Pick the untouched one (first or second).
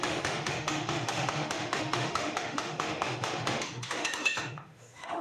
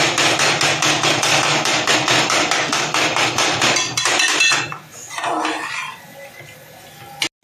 second